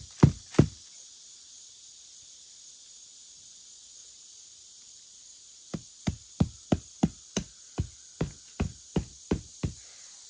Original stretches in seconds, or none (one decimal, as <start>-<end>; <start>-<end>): 0.0-4.6; 6.8-8.7; 9.5-10.3